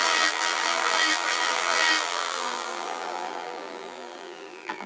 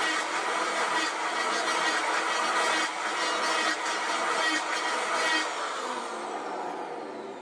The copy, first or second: first